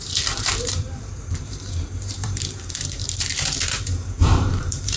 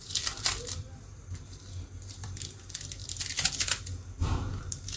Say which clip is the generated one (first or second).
first